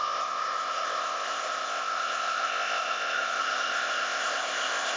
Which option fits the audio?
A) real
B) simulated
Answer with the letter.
B